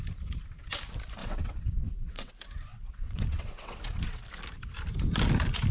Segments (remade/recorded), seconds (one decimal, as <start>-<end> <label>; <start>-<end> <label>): 0.0-1.2 recorded; 1.2-2.3 remade; 2.3-2.7 recorded; 2.7-4.2 remade; 4.2-5.7 recorded